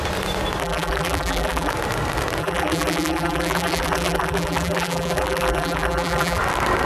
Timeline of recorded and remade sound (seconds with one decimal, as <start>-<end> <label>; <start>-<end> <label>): 0.0-0.6 recorded; 0.6-1.7 remade; 1.7-2.4 recorded; 2.4-6.4 remade; 6.4-6.9 recorded